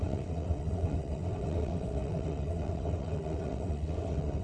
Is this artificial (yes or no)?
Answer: yes